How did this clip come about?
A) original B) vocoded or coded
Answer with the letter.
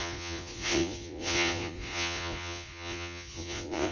B